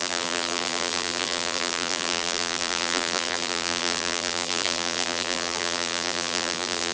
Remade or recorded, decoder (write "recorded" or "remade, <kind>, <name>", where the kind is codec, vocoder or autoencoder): remade, vocoder, BigVGAN v2